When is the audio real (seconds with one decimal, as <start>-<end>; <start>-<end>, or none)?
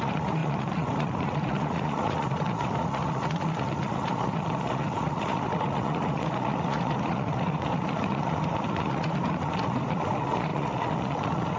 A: none